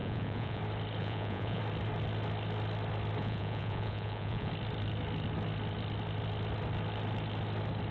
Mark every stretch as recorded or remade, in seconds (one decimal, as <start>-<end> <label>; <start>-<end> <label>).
0.0-0.6 remade; 0.6-1.0 recorded; 1.0-1.6 remade; 1.6-3.2 recorded; 3.2-4.5 remade; 4.5-7.9 recorded